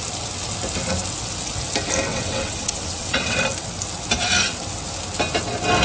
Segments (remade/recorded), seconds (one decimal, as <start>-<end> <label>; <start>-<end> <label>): 0.0-2.1 recorded; 2.1-3.4 remade; 3.4-5.8 recorded